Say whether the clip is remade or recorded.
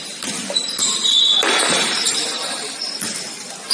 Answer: recorded